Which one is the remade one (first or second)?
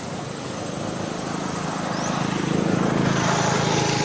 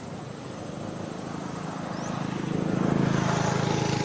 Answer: first